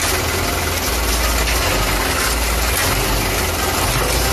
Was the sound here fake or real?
real